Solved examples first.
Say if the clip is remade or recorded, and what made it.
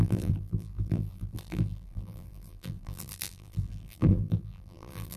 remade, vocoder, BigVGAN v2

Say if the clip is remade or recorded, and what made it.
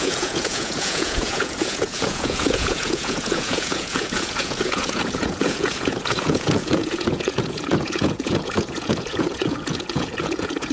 remade, vocoder, Vocos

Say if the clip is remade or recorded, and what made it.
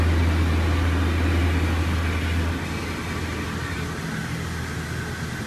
recorded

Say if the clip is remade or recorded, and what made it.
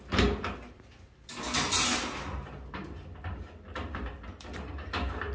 recorded